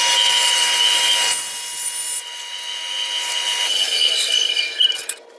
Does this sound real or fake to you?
real